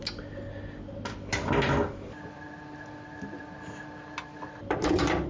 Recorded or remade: recorded